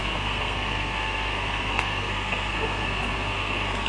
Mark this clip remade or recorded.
remade